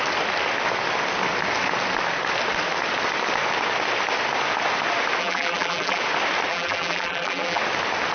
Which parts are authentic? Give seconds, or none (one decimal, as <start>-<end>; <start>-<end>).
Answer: 0.0-5.2; 6.0-6.5; 7.6-8.1